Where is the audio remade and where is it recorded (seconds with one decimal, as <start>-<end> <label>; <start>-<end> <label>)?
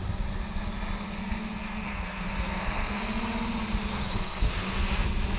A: 0.0-1.2 recorded; 1.2-3.0 remade; 3.0-3.9 recorded; 3.9-4.8 remade; 4.8-5.4 recorded